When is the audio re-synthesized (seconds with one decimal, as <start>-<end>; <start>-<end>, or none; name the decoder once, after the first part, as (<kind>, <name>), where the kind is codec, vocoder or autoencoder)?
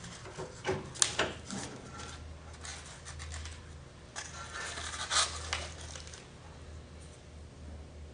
none